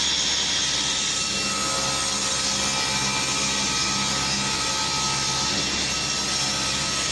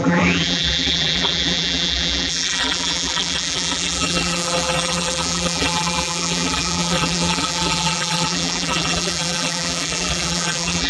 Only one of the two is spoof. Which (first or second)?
second